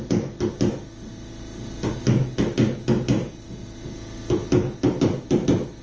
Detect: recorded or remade recorded